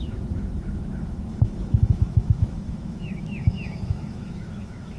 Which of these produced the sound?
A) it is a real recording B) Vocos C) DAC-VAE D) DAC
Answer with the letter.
C